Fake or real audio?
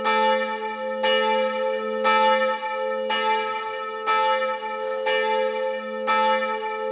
real